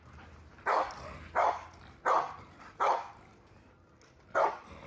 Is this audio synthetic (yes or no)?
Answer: no